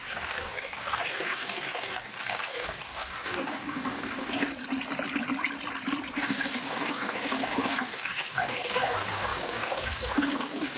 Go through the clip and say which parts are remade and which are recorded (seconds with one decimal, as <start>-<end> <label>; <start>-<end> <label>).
0.0-4.5 remade; 4.5-6.1 recorded; 6.1-10.8 remade